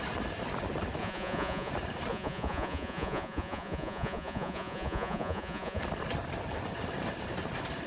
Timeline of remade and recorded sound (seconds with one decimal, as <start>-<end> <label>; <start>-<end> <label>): 0.0-1.0 recorded; 1.0-1.7 remade; 1.7-2.1 recorded; 2.1-5.8 remade; 5.8-7.9 recorded